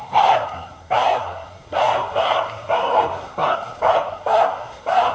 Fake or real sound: fake